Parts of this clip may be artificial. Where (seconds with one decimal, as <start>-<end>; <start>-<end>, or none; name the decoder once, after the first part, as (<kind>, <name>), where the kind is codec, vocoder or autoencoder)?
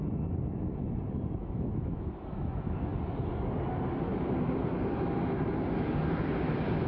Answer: 1.4-2.9 (autoencoder, DAC-VAE)